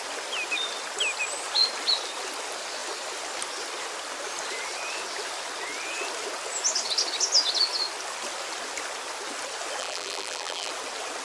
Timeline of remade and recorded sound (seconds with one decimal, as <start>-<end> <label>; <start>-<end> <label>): 0.0-9.8 recorded; 9.8-10.7 remade; 10.7-11.2 recorded